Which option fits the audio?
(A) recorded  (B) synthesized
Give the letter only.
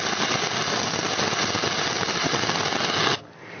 A